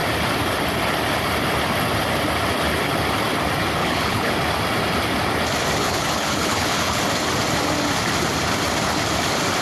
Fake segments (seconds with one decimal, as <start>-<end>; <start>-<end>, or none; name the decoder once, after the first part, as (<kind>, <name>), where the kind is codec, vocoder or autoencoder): 3.8-4.3 (codec, HILCodec); 5.8-7.0